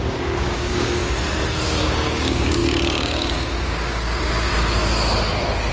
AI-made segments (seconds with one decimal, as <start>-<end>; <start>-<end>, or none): 0.0-1.0; 1.8-4.5